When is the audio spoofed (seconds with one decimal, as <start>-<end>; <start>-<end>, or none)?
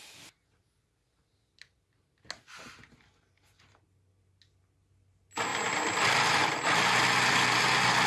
5.5-7.0